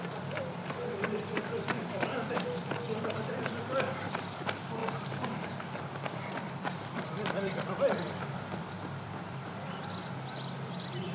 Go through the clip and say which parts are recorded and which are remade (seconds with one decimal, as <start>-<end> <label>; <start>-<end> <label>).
0.0-4.8 recorded; 4.8-9.7 remade; 9.7-11.1 recorded